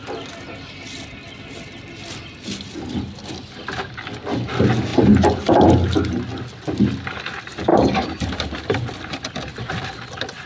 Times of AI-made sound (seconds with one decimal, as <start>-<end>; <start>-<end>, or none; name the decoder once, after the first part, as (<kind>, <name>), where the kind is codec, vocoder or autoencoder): 4.9-6.1 (vocoder, BigVGAN v2); 7.7-8.6